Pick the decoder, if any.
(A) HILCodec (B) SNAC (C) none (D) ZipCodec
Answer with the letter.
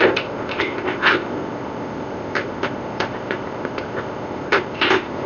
D